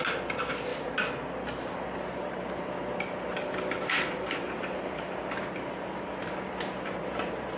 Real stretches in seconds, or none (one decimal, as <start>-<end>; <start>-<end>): 0.0-7.6